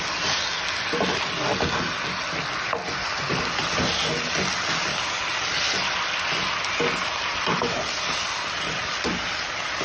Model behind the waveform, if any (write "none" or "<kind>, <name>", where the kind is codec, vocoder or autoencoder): none